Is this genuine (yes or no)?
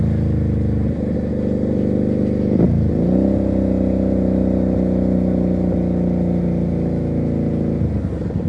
yes